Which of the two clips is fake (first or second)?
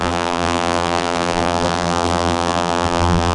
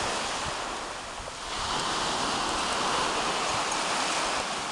first